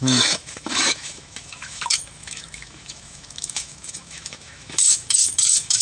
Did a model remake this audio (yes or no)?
yes